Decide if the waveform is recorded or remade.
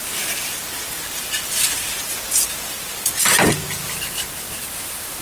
recorded